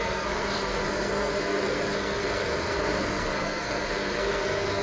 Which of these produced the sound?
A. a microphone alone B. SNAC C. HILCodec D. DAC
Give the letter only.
B